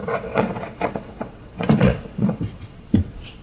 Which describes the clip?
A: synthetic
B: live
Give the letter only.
A